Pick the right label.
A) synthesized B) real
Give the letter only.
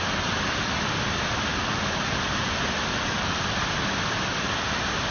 B